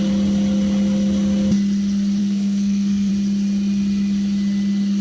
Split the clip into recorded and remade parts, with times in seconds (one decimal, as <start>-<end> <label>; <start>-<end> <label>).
0.0-2.2 recorded; 2.2-3.1 remade; 3.1-5.0 recorded